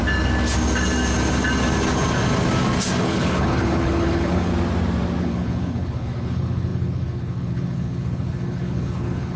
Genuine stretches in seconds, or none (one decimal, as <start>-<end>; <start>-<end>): 0.0-3.0; 4.5-5.2